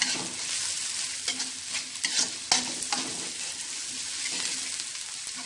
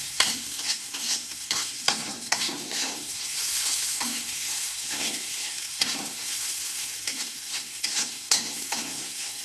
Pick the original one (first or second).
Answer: first